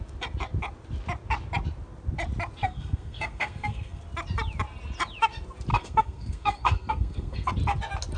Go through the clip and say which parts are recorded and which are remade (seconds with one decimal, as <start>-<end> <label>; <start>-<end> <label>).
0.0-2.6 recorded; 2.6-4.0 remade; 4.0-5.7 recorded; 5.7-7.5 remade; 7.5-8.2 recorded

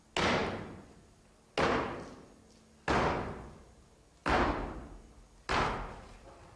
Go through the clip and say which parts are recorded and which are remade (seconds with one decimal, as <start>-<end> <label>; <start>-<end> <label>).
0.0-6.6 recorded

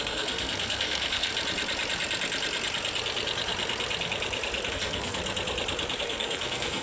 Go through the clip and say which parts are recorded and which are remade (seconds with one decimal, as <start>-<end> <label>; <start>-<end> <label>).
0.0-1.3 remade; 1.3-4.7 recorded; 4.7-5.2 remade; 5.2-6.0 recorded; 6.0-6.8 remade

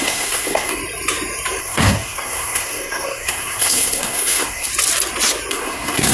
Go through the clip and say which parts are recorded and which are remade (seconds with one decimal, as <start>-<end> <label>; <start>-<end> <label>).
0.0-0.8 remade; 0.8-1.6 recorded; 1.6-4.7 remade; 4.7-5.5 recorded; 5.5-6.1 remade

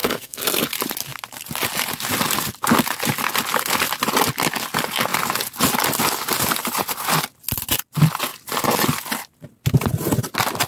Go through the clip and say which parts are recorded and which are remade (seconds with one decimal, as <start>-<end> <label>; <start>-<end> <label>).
0.0-0.7 remade; 0.7-10.7 recorded